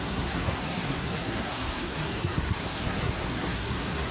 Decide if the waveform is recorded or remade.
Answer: remade